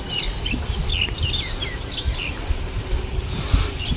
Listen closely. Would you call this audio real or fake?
real